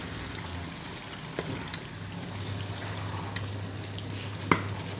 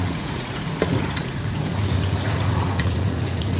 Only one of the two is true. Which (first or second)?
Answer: first